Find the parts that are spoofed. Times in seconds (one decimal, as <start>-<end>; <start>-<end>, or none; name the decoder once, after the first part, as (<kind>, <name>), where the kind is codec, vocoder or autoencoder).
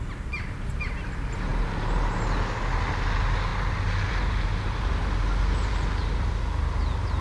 none